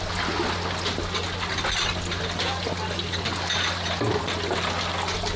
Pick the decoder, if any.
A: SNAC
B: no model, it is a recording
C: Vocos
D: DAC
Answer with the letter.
B